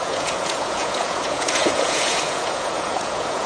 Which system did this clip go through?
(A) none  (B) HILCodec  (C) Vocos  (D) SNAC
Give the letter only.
C